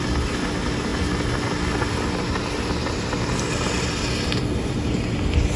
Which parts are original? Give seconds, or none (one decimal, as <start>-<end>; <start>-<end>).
0.0-5.6